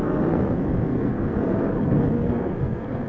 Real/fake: fake